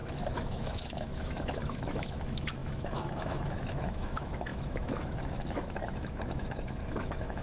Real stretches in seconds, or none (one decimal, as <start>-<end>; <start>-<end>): none